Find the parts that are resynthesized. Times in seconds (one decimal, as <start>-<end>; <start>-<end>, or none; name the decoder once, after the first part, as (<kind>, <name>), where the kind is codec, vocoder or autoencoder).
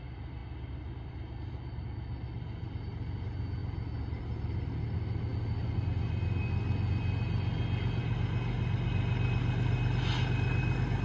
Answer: none